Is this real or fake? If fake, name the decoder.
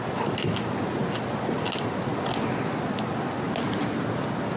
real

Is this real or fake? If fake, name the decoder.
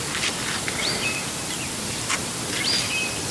real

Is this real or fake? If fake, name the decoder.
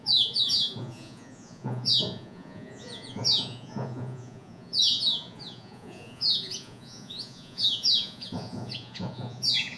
fake, vocoder, Vocos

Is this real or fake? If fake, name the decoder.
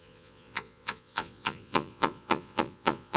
fake, vocoder, Vocos